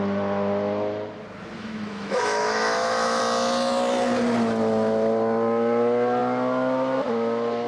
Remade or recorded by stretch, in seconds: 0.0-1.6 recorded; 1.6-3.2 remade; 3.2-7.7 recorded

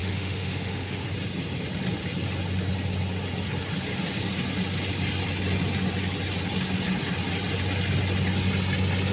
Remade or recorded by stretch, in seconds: 0.0-1.1 remade; 1.1-9.1 recorded

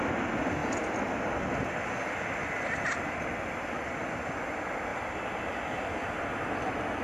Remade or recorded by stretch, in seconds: 0.0-7.0 recorded

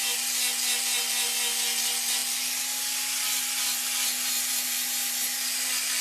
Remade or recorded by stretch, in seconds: 0.0-6.0 recorded

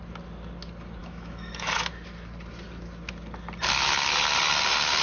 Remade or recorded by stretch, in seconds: 0.0-1.0 recorded; 1.0-1.9 remade; 1.9-5.0 recorded

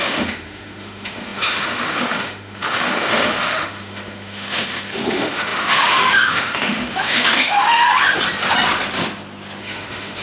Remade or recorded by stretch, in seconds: 0.0-7.9 remade; 7.9-9.6 recorded; 9.6-10.2 remade

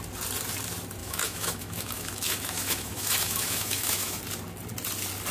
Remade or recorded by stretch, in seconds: 0.0-1.0 recorded; 1.0-4.2 remade; 4.2-5.3 recorded

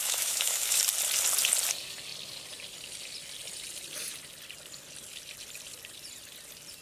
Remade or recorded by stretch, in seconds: 0.0-0.8 remade; 0.8-6.8 recorded